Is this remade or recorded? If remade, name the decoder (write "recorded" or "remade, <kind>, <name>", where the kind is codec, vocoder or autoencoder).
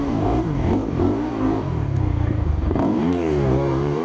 remade, codec, DAC